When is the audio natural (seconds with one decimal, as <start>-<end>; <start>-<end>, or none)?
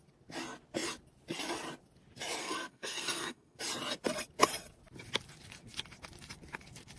0.0-2.4; 3.6-7.0